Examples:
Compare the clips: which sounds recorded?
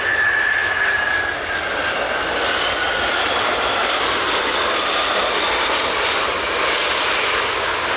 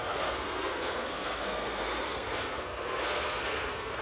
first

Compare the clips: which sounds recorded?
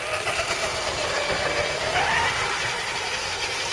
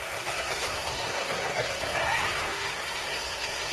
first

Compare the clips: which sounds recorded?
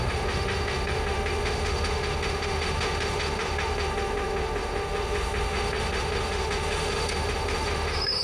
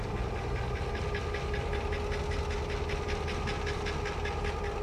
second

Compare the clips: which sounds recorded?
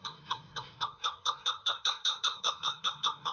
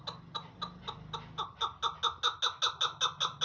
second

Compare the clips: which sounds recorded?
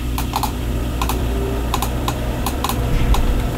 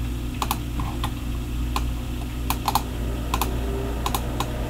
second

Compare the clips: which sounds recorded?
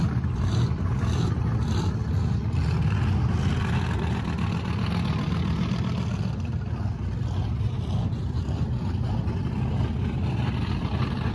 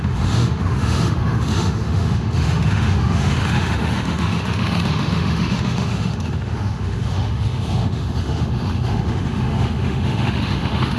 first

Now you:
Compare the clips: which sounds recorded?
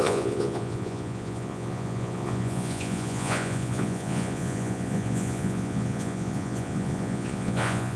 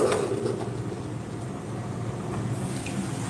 second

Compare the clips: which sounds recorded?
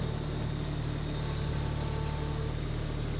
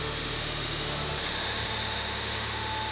first